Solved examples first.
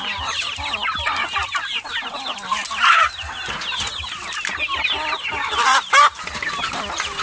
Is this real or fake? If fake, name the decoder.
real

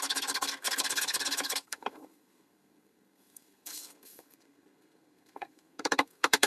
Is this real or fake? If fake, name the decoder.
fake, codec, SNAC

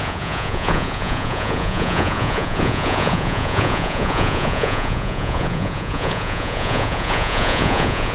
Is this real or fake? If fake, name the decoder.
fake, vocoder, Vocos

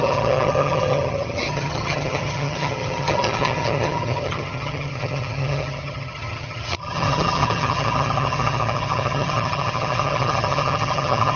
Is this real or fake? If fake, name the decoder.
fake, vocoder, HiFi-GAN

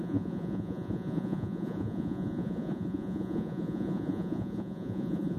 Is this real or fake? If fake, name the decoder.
fake, vocoder, Vocos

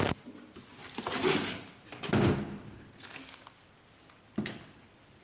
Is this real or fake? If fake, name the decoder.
real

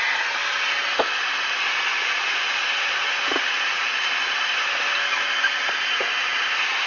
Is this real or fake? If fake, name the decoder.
real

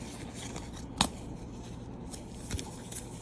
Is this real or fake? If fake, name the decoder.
real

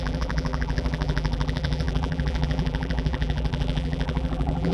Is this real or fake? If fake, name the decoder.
fake, vocoder, BigVGAN v2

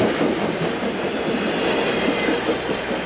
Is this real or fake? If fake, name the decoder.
real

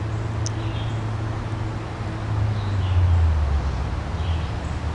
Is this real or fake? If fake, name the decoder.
real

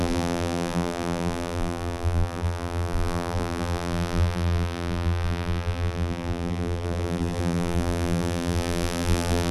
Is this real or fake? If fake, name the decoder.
fake, vocoder, BigVGAN v2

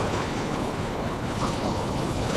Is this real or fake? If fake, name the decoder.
fake, codec, HILCodec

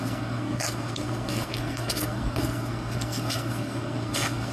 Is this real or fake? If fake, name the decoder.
fake, codec, SNAC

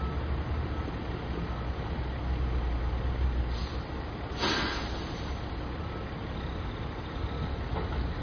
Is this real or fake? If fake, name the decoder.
real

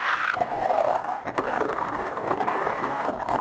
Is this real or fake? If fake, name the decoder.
fake, codec, DAC